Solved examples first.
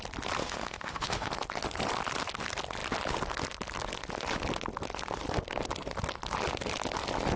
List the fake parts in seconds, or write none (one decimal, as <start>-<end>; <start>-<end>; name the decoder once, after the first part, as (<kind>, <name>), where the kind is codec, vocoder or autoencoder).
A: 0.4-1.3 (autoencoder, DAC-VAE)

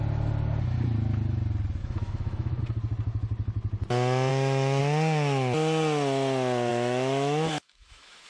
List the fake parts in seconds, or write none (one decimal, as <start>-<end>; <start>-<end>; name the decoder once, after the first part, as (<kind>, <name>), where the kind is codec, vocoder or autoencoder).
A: 1.8-2.6 (autoencoder, DAC-VAE); 4.3-4.8; 6.7-8.3

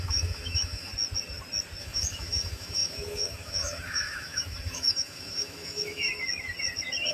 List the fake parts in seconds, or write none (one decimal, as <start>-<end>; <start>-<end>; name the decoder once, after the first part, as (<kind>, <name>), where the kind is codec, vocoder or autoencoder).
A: 0.0-0.9 (autoencoder, DAC-VAE); 1.8-6.1